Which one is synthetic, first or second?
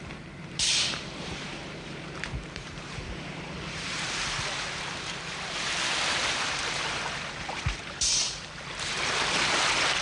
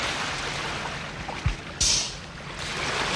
first